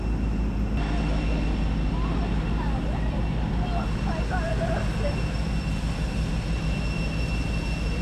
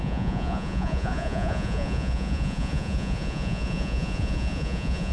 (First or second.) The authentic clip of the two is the first